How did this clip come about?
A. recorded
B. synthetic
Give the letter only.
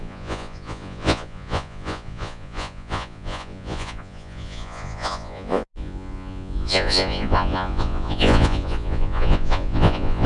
B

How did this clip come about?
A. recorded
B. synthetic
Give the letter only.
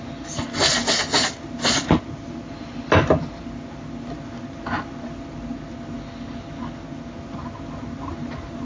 A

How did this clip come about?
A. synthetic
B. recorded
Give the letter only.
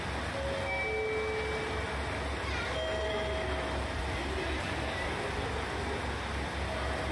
B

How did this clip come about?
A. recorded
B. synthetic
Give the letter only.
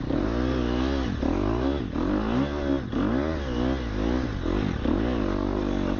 A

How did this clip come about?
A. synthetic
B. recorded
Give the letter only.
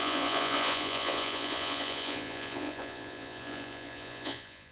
A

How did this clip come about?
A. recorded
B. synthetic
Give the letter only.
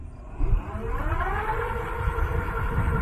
A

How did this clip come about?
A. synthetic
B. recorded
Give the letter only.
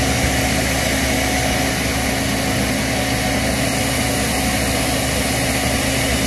B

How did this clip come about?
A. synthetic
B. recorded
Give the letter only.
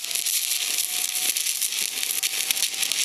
B